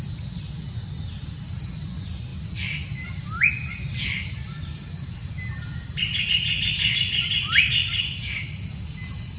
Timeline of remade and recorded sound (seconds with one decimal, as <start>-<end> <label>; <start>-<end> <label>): 0.0-2.3 recorded; 2.3-3.5 remade; 3.5-7.8 recorded; 7.8-8.6 remade; 8.6-9.4 recorded